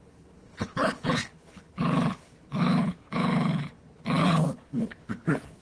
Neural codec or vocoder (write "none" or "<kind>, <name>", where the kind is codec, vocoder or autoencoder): codec, HILCodec